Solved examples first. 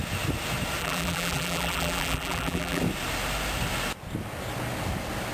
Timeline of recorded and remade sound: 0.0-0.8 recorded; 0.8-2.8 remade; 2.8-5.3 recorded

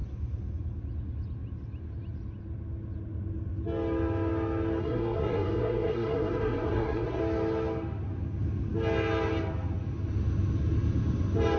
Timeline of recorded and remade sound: 0.0-4.8 recorded; 4.8-7.2 remade; 7.2-11.6 recorded

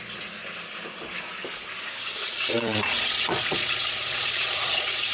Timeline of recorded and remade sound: 0.0-2.2 recorded; 2.2-5.1 remade

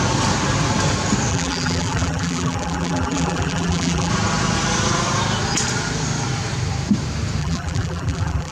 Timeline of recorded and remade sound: 0.0-1.3 recorded; 1.3-4.1 remade; 4.1-7.4 recorded; 7.4-8.5 remade